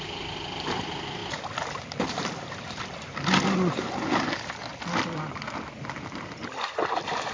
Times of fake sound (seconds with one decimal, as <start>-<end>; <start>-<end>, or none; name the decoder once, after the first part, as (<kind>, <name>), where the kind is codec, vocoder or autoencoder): none